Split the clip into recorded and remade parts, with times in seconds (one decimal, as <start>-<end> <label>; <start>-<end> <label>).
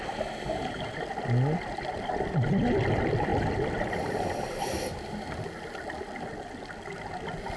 0.0-3.3 recorded; 3.3-5.0 remade; 5.0-7.6 recorded